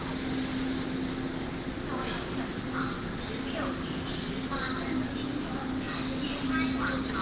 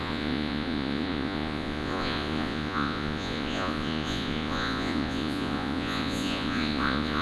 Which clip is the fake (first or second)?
second